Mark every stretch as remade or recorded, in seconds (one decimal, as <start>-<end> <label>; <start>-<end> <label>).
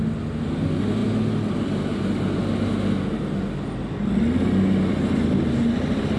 0.0-6.2 recorded